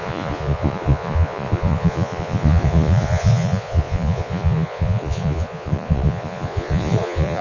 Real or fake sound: fake